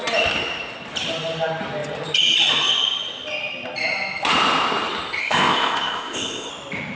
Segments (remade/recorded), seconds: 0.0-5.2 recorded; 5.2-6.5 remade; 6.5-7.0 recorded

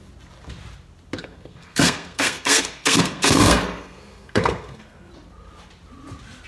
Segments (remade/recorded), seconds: 0.0-1.2 recorded; 1.2-5.1 remade; 5.1-6.5 recorded

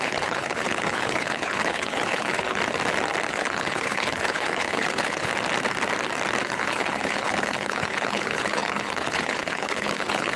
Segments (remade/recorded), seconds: 0.0-2.6 remade; 2.6-3.3 recorded; 3.3-5.3 remade; 5.3-6.4 recorded; 6.4-10.4 remade

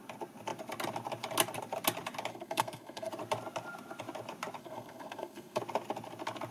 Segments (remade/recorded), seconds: 0.0-2.3 recorded; 2.3-3.1 remade; 3.1-4.6 recorded; 4.6-5.6 remade; 5.6-6.5 recorded

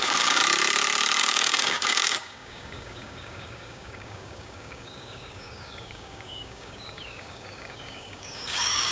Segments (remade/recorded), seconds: 0.0-0.4 remade; 0.4-1.2 recorded; 1.2-8.9 remade

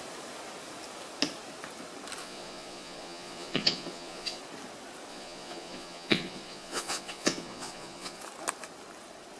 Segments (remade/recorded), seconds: 0.0-2.2 recorded; 2.2-4.4 remade; 4.4-5.1 recorded; 5.1-8.2 remade; 8.2-9.4 recorded